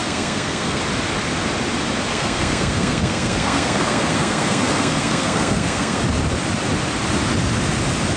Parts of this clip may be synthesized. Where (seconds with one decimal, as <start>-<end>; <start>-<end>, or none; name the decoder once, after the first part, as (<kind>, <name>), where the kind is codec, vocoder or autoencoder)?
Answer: 0.0-0.8 (codec, SNAC); 2.1-6.0